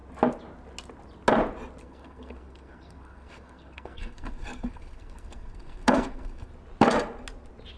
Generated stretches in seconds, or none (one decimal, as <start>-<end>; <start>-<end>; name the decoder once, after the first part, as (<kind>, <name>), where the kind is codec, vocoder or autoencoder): 1.8-6.5 (codec, SNAC)